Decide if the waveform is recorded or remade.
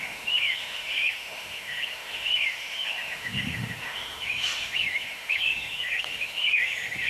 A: remade